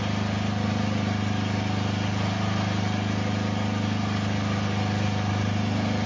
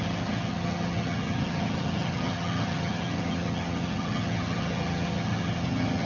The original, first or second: first